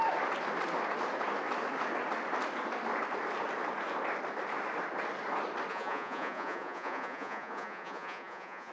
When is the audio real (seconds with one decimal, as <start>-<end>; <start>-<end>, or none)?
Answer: 0.0-5.7